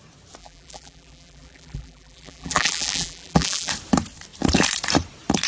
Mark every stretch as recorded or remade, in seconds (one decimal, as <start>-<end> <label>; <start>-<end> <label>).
0.0-0.4 recorded; 0.4-3.7 remade; 3.7-5.5 recorded